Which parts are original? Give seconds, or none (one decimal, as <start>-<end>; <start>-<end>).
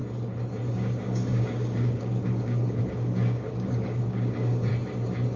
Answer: 0.0-0.7; 4.7-5.4